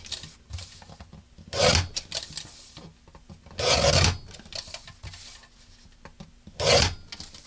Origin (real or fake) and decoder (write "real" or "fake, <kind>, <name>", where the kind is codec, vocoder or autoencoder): real